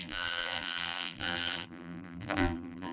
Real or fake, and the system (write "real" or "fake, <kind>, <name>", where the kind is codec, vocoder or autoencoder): fake, vocoder, BigVGAN v2